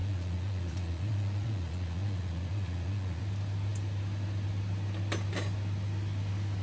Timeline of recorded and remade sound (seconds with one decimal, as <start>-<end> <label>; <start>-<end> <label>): 0.0-3.2 remade; 3.2-6.6 recorded